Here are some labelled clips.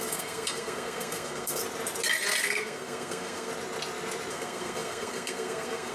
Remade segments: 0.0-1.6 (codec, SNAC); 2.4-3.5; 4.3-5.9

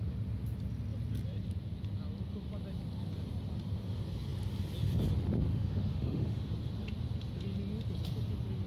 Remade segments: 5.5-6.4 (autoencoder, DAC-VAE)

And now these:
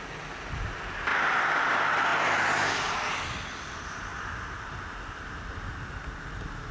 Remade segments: 4.1-4.7 (vocoder, BigVGAN v2)

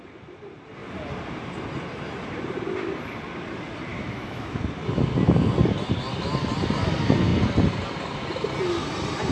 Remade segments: 3.9-4.6 (autoencoder, DAC-VAE)